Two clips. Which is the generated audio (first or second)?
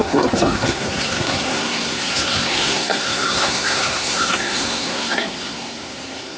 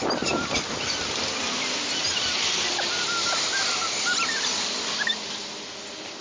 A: first